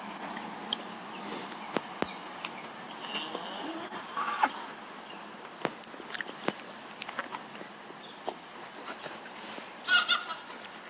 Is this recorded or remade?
recorded